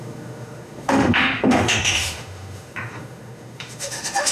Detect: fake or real fake